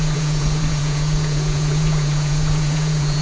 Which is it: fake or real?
fake